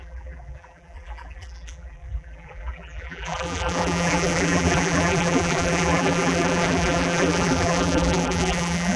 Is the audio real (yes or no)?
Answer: no